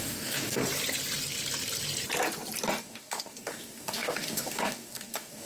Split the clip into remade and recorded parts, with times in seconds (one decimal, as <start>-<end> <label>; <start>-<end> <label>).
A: 0.0-0.6 remade; 0.6-2.8 recorded; 2.8-5.5 remade